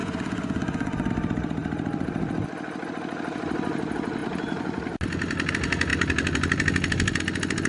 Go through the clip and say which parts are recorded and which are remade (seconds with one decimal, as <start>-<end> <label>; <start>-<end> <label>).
0.0-1.1 remade; 1.1-7.7 recorded